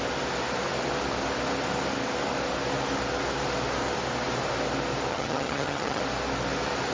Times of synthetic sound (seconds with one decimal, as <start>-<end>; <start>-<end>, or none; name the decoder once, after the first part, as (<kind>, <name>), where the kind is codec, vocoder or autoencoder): 5.1-6.0 (vocoder, HiFi-GAN)